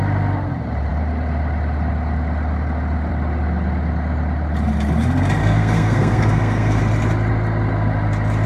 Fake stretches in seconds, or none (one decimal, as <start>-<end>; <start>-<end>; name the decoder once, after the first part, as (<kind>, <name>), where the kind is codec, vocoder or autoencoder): 5.4-6.8 (codec, SNAC)